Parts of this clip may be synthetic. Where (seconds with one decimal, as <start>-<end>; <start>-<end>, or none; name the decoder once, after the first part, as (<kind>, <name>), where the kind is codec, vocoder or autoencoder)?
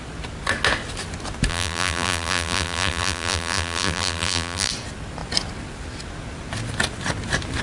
1.5-4.7 (vocoder, BigVGAN v2)